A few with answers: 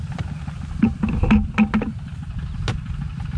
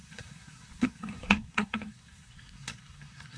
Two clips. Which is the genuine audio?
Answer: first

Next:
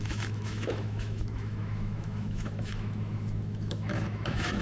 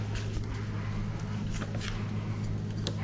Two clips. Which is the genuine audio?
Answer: second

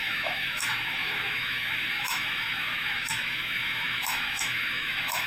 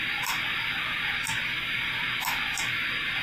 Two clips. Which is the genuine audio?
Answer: second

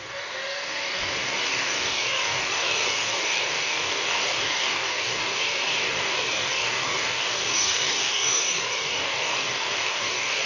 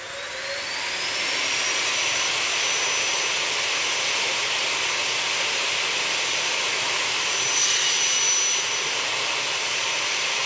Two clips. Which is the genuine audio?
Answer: second